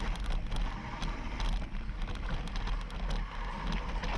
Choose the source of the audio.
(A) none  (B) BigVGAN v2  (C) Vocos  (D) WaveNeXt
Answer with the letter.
A